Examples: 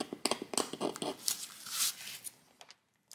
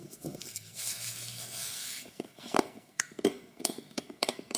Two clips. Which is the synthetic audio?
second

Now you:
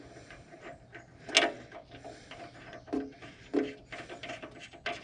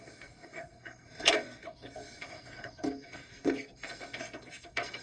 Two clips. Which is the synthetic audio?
second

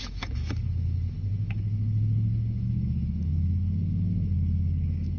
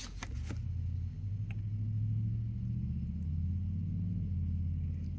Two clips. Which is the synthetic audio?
first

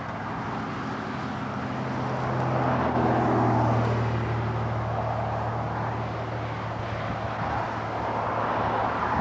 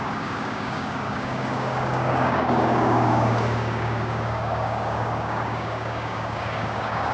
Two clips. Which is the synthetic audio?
second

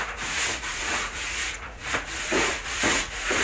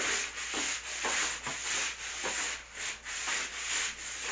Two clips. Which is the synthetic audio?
first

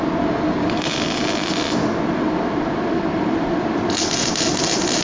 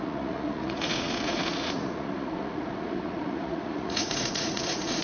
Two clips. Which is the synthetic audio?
second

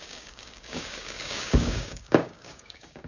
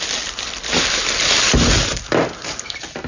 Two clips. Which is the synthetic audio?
first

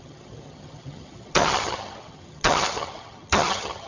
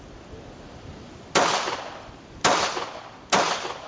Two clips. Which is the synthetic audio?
first